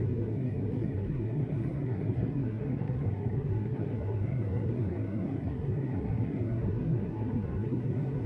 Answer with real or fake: fake